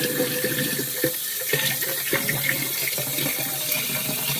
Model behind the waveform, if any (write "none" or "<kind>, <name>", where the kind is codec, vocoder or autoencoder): none